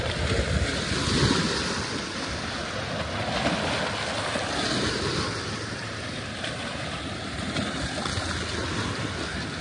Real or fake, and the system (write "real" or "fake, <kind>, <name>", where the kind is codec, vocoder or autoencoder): real